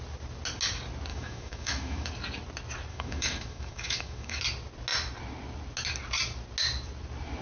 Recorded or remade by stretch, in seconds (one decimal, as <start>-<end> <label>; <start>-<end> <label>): 0.0-1.1 recorded; 1.1-2.1 remade; 2.1-2.9 recorded; 2.9-4.4 remade; 4.4-7.4 recorded